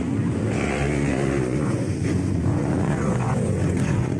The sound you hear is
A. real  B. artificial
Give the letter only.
B